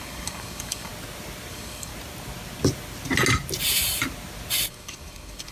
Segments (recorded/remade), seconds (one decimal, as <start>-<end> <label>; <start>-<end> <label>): 0.0-0.9 remade; 0.9-1.5 recorded; 1.5-1.9 remade; 1.9-4.7 recorded; 4.7-5.5 remade